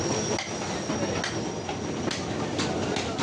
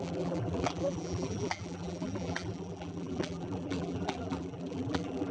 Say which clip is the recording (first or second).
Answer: first